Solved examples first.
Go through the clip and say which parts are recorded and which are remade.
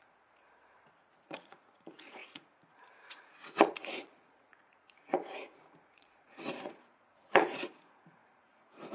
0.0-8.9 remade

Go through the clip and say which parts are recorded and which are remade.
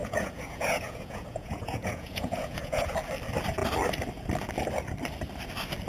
0.0-2.9 remade; 2.9-5.9 recorded